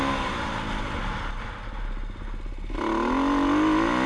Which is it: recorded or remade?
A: recorded